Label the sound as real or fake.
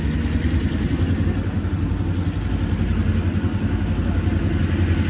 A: real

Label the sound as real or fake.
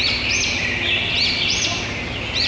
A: real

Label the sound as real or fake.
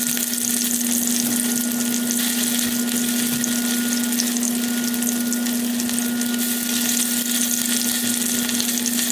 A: real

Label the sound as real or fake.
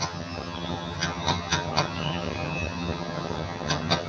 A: fake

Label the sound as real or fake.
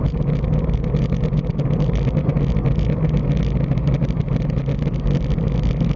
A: real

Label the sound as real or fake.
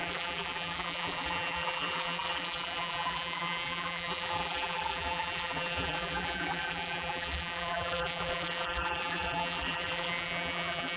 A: fake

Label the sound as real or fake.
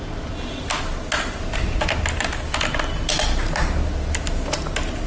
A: real